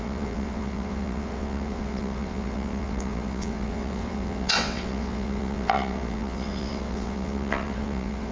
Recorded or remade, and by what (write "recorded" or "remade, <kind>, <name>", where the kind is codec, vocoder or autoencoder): remade, vocoder, WaveNeXt